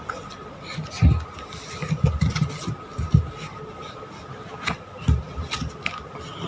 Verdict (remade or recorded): recorded